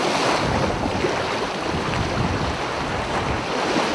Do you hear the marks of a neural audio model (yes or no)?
no